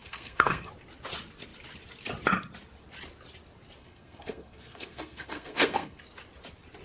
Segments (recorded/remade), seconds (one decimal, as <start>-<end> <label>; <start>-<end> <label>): 0.0-0.7 remade; 0.7-3.8 recorded; 3.8-6.0 remade; 6.0-6.8 recorded